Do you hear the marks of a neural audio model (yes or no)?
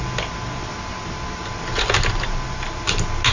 no